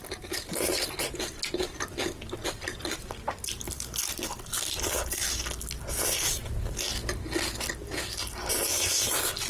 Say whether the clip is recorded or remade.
recorded